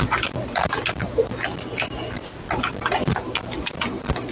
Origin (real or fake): real